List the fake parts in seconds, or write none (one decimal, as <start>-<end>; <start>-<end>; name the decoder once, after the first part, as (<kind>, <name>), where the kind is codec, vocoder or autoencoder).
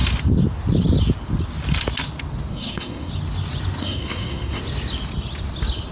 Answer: 2.5-3.1 (codec, SNAC); 3.8-4.6